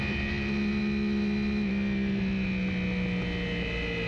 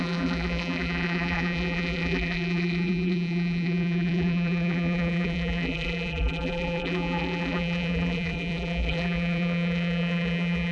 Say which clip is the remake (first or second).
second